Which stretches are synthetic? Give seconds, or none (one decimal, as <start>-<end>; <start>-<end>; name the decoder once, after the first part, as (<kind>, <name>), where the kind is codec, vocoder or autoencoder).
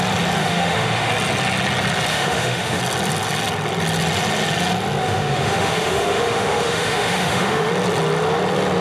0.4-1.1 (autoencoder, DAC-VAE); 2.1-2.8; 5.0-7.7